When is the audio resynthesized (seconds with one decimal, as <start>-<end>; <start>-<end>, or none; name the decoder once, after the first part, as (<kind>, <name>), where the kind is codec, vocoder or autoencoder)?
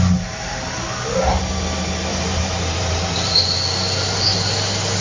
2.1-3.4 (vocoder, BigVGAN v2)